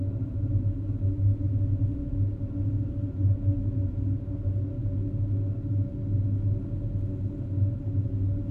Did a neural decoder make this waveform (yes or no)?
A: no